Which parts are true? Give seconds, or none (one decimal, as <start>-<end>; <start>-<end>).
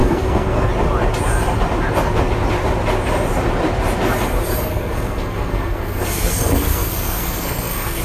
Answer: 0.7-4.7